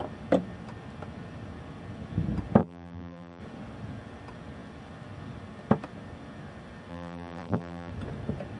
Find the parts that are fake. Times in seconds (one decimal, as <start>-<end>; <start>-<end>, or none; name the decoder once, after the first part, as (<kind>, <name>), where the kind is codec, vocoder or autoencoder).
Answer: 2.6-3.4 (vocoder, BigVGAN v2); 6.9-7.9